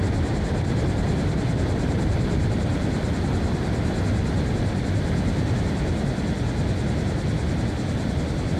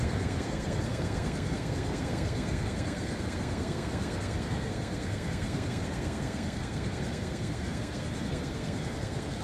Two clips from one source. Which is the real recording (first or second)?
first